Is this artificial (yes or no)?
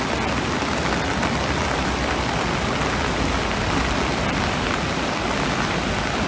no